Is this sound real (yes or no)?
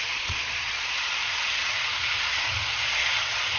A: no